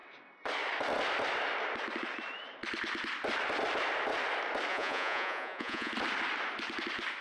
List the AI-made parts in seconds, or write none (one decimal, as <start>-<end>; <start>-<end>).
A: 4.7-5.9